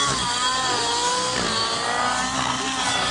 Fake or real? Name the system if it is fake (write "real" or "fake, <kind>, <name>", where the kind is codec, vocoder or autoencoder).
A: real